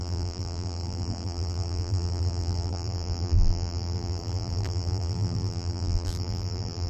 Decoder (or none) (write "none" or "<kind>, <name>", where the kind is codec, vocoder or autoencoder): vocoder, BigVGAN v2